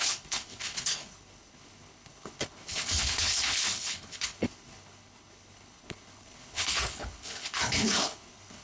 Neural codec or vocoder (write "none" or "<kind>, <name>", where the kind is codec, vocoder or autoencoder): codec, HILCodec